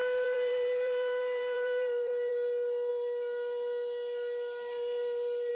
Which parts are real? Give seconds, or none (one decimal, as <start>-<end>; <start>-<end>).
2.3-5.5